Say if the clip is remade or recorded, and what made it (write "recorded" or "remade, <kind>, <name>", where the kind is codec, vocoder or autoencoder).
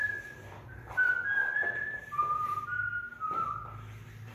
recorded